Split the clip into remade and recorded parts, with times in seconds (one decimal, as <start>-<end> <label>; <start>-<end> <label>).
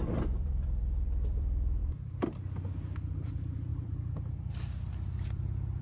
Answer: 0.0-5.8 remade